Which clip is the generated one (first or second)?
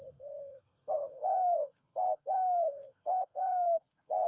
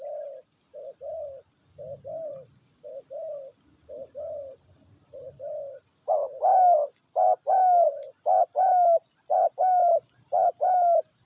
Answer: first